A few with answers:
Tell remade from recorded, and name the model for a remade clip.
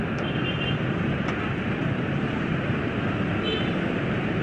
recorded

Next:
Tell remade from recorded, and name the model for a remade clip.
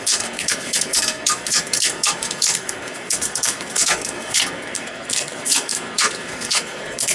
remade, codec, SNAC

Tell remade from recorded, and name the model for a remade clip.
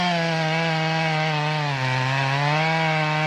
recorded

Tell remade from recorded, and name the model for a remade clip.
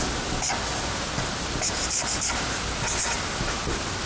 recorded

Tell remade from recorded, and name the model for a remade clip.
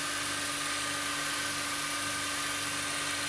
recorded